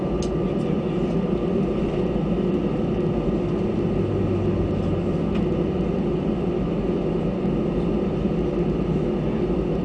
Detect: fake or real real